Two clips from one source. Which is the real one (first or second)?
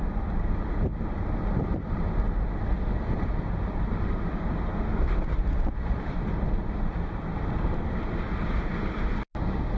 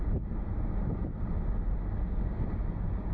second